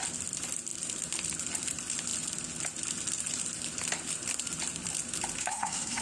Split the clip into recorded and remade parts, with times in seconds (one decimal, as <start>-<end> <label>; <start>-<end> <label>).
0.0-5.4 recorded; 5.4-6.0 remade